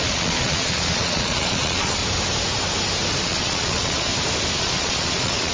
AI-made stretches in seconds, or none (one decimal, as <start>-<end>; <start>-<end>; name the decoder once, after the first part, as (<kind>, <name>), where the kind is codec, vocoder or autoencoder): 0.0-2.0 (vocoder, Vocos); 3.2-4.1; 4.6-5.5